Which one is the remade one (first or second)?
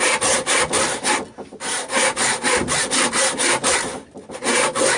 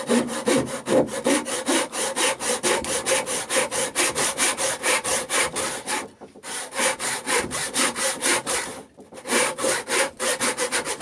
second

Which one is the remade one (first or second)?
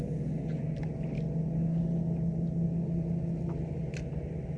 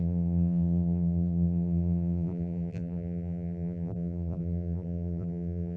second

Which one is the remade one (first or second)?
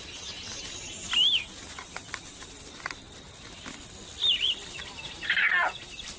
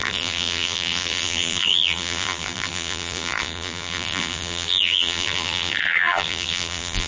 second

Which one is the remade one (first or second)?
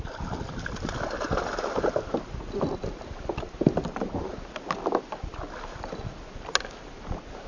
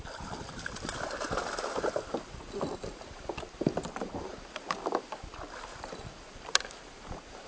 second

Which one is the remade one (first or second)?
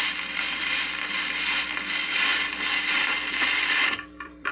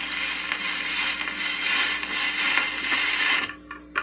first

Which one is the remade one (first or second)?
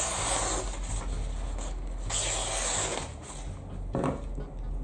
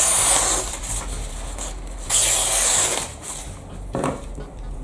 second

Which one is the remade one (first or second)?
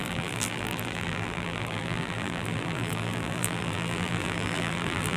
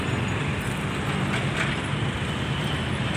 first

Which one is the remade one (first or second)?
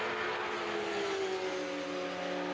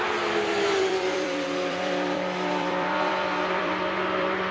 second